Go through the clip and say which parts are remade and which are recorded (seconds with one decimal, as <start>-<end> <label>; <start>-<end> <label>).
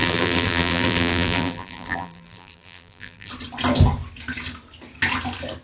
0.0-3.3 remade; 3.3-5.6 recorded